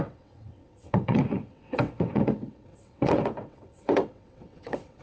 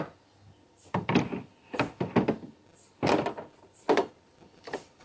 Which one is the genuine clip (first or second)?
second